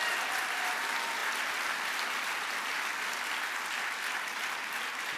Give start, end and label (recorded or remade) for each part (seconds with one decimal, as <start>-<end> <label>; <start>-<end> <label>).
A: 0.0-5.2 recorded